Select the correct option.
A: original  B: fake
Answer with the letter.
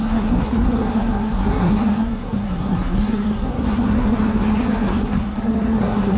B